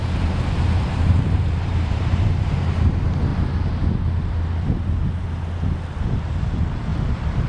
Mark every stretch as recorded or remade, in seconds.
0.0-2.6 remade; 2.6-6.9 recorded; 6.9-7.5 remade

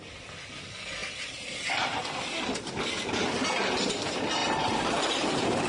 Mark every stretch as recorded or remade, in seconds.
0.0-4.4 recorded; 4.4-5.7 remade

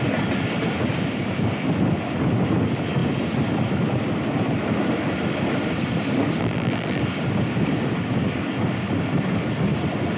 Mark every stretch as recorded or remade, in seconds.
0.0-6.4 recorded; 6.4-7.0 remade; 7.0-10.2 recorded

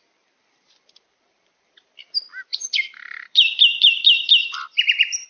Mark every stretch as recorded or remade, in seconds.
0.0-5.3 remade

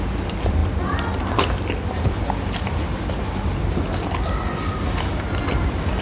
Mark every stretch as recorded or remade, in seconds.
0.0-6.0 recorded

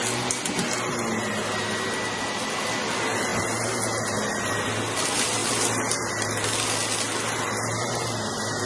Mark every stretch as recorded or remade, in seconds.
0.0-8.7 recorded

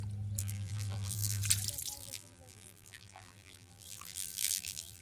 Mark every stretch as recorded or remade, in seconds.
0.0-0.4 recorded; 0.4-1.4 remade; 1.4-2.0 recorded; 2.0-5.0 remade